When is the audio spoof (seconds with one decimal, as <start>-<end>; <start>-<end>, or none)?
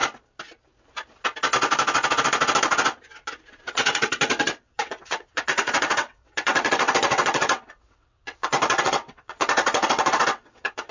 3.6-10.9